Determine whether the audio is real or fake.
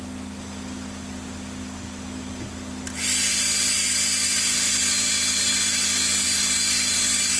real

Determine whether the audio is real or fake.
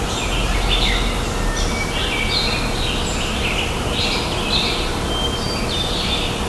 real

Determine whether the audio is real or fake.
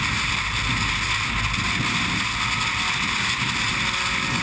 real